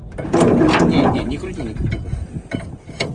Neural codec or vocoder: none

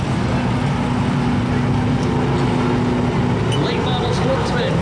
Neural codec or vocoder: none